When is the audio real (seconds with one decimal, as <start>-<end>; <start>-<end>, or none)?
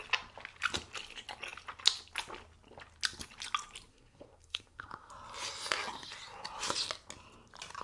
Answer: 0.0-3.9; 5.1-7.8